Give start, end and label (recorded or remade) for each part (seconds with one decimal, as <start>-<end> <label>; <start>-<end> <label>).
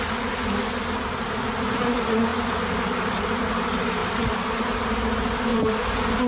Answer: 0.0-4.0 recorded; 4.0-5.0 remade; 5.0-5.5 recorded; 5.5-6.3 remade